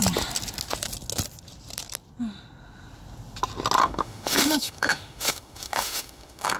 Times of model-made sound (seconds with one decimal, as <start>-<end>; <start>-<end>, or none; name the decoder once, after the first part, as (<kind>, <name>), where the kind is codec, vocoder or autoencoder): 3.8-6.6 (autoencoder, DAC-VAE)